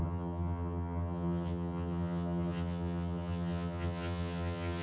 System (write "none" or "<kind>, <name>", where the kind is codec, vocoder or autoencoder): vocoder, HiFi-GAN